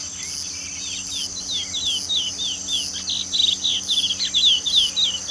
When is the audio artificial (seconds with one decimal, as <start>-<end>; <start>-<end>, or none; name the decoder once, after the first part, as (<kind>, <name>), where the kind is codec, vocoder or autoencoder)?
none